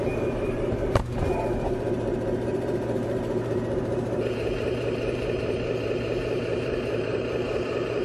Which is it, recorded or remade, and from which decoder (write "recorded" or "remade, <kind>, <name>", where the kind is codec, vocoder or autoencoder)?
remade, vocoder, BigVGAN v2